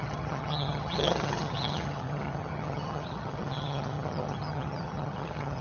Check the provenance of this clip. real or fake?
fake